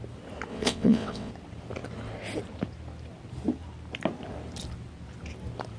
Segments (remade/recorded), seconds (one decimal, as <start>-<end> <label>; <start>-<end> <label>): 0.0-0.5 recorded; 0.5-1.3 remade; 1.3-5.8 recorded